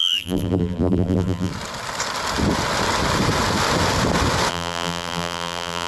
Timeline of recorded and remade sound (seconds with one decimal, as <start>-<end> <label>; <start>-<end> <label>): 0.0-1.5 remade; 1.5-4.5 recorded; 4.5-5.9 remade